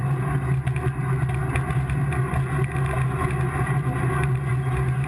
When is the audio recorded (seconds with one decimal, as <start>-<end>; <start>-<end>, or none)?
0.0-5.1